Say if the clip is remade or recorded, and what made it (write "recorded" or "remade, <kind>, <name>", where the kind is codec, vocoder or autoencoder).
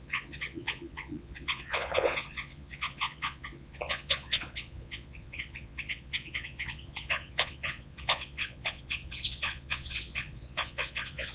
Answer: remade, vocoder, Vocos